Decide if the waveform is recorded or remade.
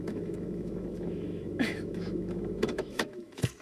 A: remade